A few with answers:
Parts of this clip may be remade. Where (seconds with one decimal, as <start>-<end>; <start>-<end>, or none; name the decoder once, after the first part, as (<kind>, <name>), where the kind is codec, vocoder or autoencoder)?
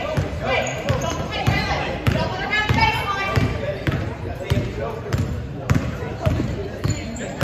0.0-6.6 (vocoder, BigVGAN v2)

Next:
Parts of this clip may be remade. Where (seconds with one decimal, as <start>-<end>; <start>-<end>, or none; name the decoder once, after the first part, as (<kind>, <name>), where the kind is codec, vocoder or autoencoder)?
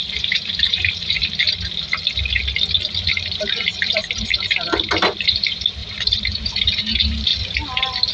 0.0-1.2 (vocoder, BigVGAN v2); 3.1-7.3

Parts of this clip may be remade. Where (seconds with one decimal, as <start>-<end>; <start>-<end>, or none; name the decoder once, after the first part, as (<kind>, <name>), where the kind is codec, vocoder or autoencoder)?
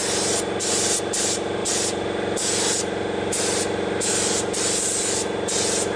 none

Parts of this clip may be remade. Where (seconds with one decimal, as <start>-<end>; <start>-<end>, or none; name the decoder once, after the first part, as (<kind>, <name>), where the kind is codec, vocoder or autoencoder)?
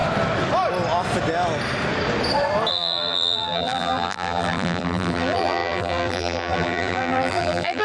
2.7-7.8 (vocoder, BigVGAN v2)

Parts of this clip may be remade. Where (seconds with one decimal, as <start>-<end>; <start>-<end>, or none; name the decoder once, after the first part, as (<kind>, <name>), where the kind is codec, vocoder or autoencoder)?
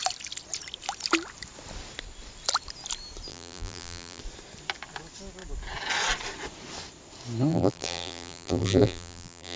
3.3-4.2 (vocoder, BigVGAN v2); 7.5-9.6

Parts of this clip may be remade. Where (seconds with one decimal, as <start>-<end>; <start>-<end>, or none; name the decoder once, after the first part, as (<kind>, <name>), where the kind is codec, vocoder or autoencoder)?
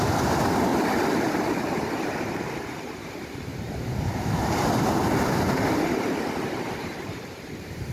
0.0-0.7 (vocoder, BigVGAN v2); 1.5-7.9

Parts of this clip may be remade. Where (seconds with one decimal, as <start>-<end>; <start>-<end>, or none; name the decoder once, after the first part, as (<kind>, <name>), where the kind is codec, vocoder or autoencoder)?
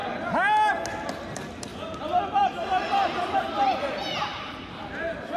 none